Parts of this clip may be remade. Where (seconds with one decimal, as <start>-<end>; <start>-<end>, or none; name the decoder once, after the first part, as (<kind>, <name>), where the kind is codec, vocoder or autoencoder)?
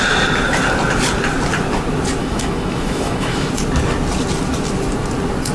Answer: 2.2-3.5 (autoencoder, DAC-VAE)